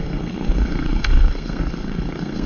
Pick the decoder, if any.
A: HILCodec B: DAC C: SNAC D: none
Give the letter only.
C